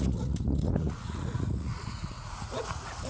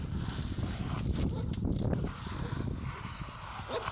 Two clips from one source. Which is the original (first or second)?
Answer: second